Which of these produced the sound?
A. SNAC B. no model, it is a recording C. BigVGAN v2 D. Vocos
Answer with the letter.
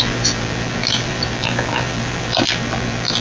C